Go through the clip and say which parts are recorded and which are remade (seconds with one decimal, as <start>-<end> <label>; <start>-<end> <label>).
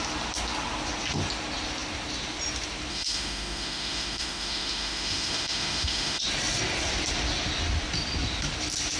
0.0-2.9 recorded; 2.9-6.2 remade; 6.2-9.0 recorded